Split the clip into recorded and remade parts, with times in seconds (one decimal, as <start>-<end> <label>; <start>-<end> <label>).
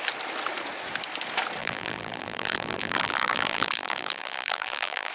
0.0-1.6 recorded; 1.6-5.1 remade